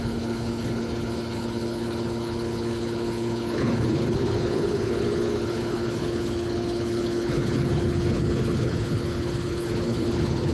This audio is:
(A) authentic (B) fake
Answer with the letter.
B